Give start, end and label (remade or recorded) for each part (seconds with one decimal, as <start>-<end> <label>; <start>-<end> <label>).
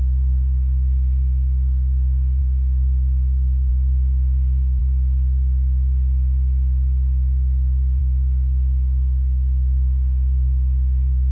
0.0-4.8 remade; 4.8-8.0 recorded; 8.0-11.3 remade